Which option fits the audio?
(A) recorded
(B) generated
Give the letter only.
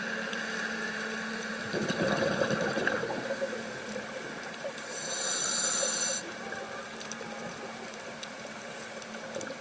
B